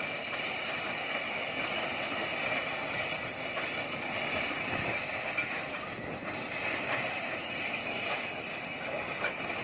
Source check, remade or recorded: remade